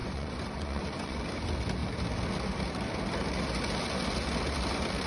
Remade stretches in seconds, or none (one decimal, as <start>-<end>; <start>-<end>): 0.0-1.2